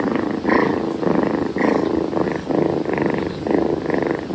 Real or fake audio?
real